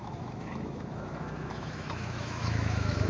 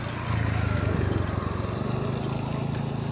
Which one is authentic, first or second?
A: second